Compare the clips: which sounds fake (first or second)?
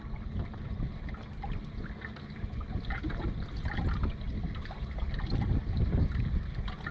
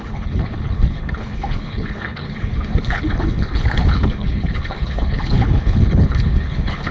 second